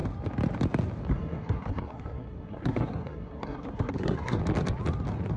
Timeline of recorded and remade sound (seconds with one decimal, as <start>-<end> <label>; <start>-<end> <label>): 0.0-1.1 recorded; 1.1-4.4 remade; 4.4-5.4 recorded